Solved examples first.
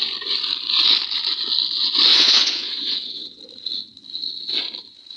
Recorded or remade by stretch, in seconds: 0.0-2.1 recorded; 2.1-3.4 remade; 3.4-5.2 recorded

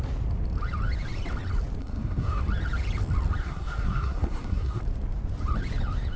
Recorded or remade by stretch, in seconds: 0.0-1.8 recorded; 1.8-2.4 remade; 2.4-3.4 recorded; 3.4-4.8 remade; 4.8-6.2 recorded